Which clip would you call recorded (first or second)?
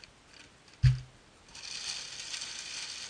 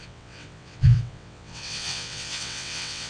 first